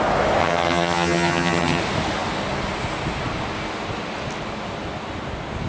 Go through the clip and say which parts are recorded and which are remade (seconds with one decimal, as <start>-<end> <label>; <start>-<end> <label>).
0.0-0.4 recorded; 0.4-1.8 remade; 1.8-5.7 recorded